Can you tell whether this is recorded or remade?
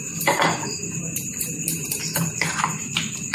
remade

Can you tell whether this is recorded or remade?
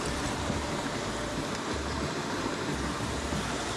remade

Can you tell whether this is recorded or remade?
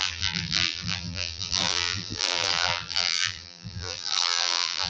remade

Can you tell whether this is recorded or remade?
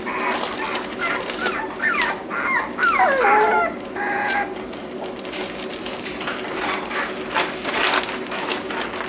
recorded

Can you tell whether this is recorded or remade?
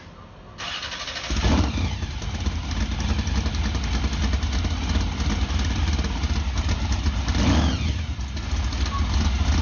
recorded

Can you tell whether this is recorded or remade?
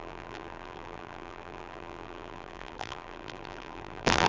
remade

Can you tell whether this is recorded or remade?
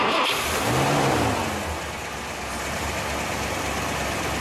recorded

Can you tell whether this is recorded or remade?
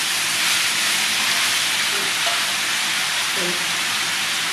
remade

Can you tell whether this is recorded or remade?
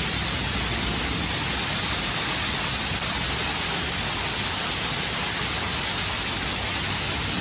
recorded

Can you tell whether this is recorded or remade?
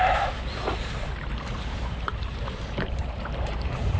remade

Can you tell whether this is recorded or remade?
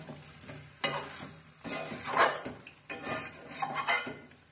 remade